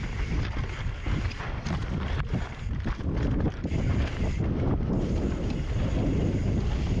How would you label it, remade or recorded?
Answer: recorded